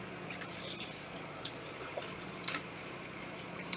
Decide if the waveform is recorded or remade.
remade